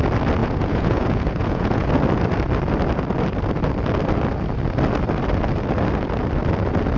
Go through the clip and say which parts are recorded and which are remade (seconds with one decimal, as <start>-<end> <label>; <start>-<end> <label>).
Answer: 0.0-0.4 recorded; 0.4-1.9 remade; 1.9-7.0 recorded